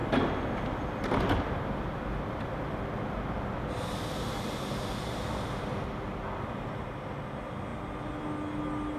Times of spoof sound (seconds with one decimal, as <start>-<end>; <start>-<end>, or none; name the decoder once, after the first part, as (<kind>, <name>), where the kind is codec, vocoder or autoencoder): none